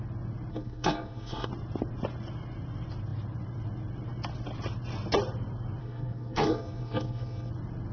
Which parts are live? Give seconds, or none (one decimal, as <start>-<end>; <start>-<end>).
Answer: 0.0-0.5; 1.5-5.8; 7.5-7.9